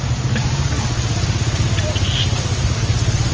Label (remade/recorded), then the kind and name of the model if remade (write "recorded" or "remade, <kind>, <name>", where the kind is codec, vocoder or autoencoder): recorded